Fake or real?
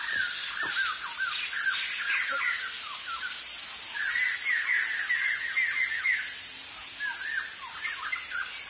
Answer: real